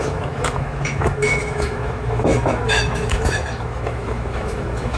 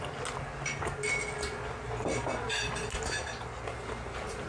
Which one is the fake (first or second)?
first